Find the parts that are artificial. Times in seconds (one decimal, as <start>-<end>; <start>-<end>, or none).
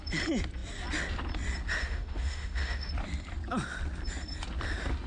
1.8-2.9